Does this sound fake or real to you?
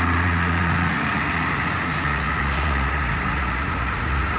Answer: fake